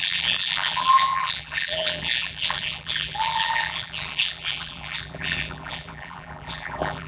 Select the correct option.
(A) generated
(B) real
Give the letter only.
A